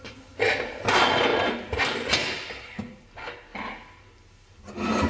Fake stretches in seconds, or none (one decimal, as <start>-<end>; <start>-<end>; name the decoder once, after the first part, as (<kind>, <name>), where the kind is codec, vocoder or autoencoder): none